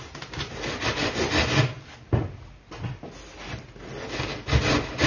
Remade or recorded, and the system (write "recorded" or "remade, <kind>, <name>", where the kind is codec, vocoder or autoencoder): recorded